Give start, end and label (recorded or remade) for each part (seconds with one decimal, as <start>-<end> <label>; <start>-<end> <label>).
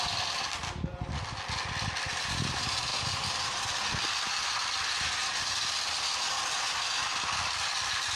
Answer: 0.0-2.9 recorded; 2.9-4.7 remade; 4.7-5.2 recorded; 5.2-5.7 remade; 5.7-8.2 recorded